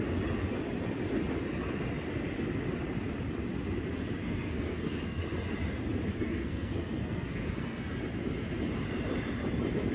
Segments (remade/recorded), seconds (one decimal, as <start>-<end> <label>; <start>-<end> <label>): 0.0-4.2 recorded; 4.2-5.2 remade; 5.2-6.1 recorded; 6.1-7.8 remade; 7.8-9.9 recorded